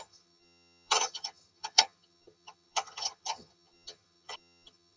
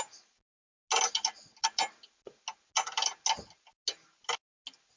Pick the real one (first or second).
second